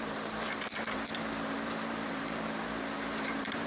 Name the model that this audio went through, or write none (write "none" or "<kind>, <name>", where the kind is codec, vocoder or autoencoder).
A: vocoder, BigVGAN v2